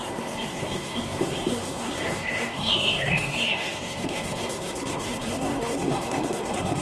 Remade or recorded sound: remade